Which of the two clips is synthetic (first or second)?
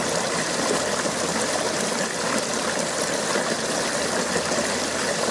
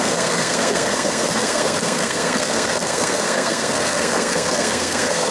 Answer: second